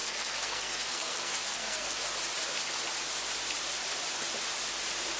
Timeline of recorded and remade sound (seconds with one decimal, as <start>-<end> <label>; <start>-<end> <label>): 0.0-2.0 remade; 2.0-5.2 recorded